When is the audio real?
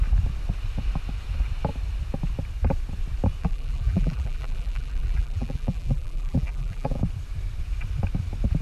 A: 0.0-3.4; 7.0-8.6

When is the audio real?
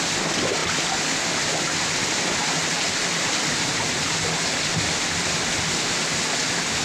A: 0.0-6.8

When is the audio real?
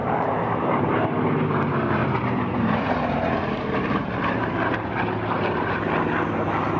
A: 0.9-2.0; 5.8-6.8